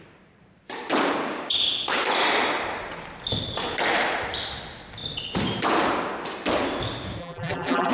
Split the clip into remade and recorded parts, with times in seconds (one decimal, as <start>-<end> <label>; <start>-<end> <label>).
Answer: 0.0-7.2 recorded; 7.2-7.9 remade